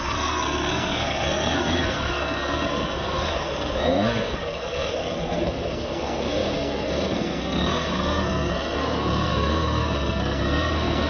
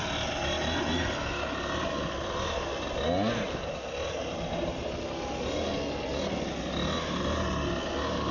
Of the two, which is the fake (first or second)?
first